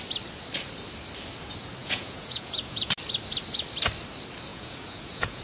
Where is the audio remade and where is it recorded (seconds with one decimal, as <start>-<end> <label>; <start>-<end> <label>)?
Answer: 0.0-1.8 recorded; 1.8-2.9 remade; 2.9-4.5 recorded; 4.5-5.4 remade